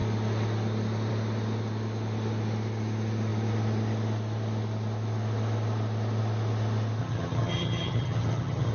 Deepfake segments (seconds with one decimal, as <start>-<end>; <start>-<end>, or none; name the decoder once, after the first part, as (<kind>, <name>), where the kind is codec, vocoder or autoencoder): 7.0-8.7 (vocoder, HiFi-GAN)

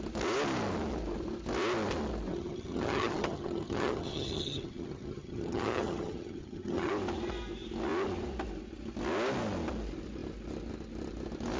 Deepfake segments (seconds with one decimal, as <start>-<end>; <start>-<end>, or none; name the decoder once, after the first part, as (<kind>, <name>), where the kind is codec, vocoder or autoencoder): 2.3-6.9 (vocoder, HiFi-GAN)

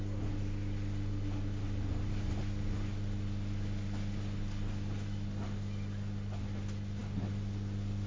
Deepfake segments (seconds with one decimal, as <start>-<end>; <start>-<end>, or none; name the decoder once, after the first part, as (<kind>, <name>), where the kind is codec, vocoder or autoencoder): none